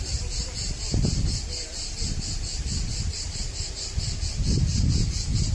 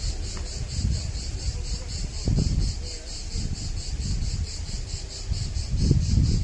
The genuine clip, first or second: second